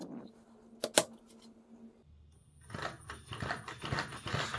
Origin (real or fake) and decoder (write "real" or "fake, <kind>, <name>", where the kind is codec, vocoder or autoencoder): real